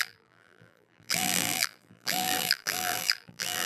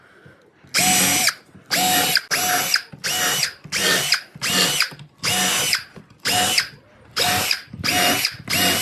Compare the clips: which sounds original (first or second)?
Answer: second